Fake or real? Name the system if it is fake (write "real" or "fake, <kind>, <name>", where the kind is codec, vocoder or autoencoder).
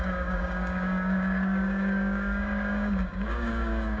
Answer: fake, codec, DAC